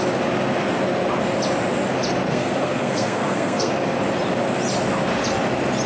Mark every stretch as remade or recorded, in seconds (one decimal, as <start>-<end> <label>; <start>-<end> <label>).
0.0-2.3 recorded; 2.3-3.7 remade; 3.7-5.9 recorded